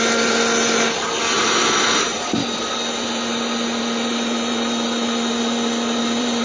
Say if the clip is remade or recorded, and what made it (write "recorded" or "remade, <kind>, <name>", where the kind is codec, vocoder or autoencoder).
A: remade, vocoder, BigVGAN v2